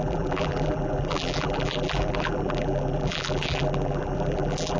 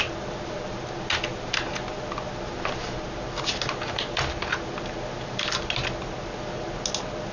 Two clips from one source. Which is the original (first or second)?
second